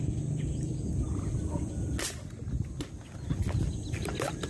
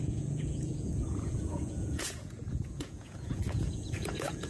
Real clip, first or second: first